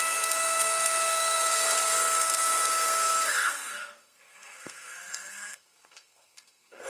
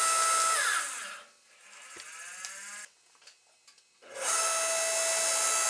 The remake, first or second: first